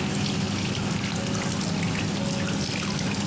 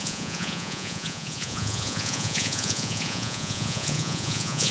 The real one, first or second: first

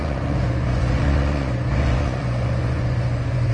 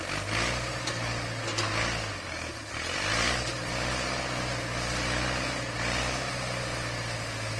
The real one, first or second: second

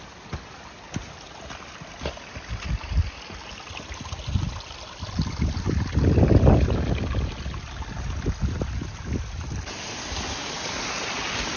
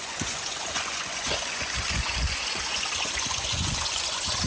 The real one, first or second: first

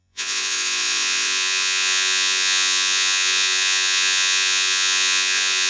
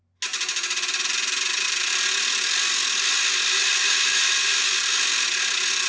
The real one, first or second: second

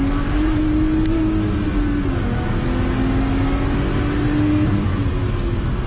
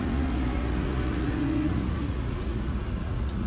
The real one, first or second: first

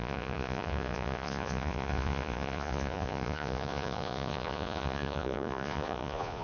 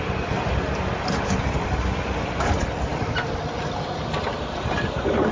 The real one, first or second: second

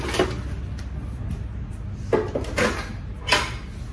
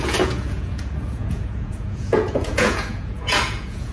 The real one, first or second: first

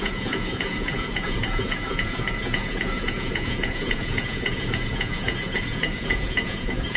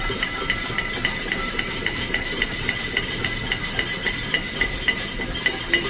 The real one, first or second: second